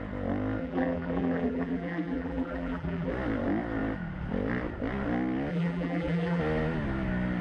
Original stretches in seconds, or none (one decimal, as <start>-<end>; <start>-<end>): 0.0-0.6; 3.1-5.5; 6.4-7.4